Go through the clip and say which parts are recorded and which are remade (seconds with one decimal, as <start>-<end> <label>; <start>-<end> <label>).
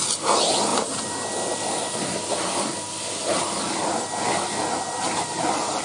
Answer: 0.0-5.8 recorded